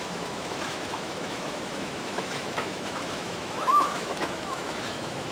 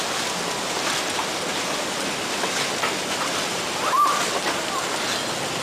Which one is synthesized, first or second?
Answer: first